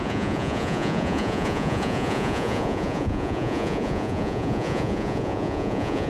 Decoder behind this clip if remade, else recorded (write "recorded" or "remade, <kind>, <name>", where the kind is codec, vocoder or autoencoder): remade, vocoder, Vocos